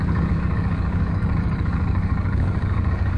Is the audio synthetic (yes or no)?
yes